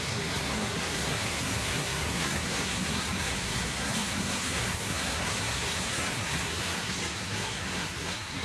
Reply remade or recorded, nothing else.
remade